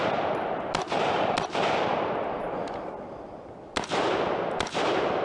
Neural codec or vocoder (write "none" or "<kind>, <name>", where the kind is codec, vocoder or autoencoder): none